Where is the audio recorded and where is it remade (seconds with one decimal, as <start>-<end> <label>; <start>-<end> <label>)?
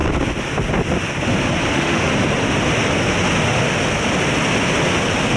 0.0-1.7 recorded; 1.7-2.1 remade; 2.1-5.4 recorded